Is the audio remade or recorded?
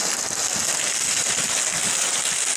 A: recorded